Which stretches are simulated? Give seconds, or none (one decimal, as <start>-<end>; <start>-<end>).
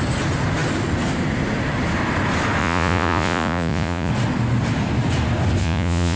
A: 2.6-4.1; 5.6-6.2